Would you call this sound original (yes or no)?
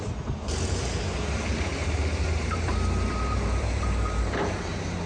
no